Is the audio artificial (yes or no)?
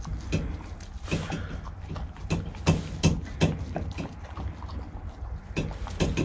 no